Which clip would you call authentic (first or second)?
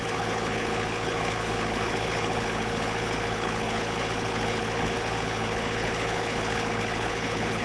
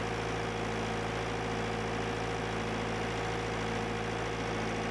second